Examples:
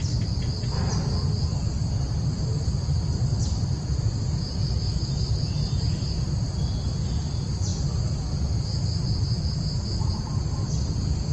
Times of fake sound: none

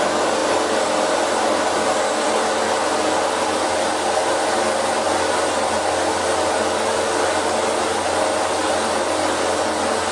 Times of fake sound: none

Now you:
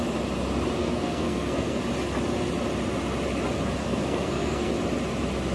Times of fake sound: 0.8-1.8; 3.8-4.7

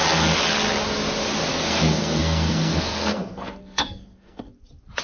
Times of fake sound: 1.5-4.5